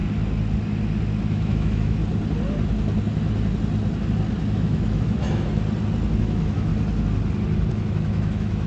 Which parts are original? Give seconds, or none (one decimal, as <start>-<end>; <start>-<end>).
0.0-1.3; 2.0-4.5; 5.5-6.2; 6.7-7.7